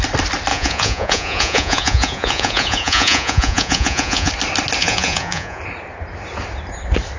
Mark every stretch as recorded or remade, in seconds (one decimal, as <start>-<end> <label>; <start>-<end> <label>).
0.0-0.5 recorded; 0.5-4.3 remade; 4.3-4.8 recorded; 4.8-5.6 remade; 5.6-7.2 recorded